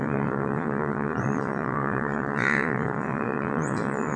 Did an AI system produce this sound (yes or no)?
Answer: yes